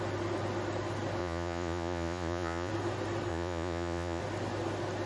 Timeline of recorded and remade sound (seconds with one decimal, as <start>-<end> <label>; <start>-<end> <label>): 0.0-1.2 recorded; 1.2-2.7 remade; 2.7-3.3 recorded; 3.3-4.2 remade; 4.2-5.1 recorded